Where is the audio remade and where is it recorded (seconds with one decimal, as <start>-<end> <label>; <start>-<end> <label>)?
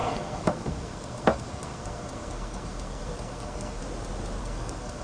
0.0-3.8 remade; 3.8-4.4 recorded; 4.4-5.0 remade